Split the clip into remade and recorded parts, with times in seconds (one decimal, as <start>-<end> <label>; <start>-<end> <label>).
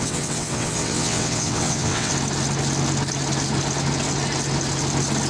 0.0-2.1 remade; 2.1-5.3 recorded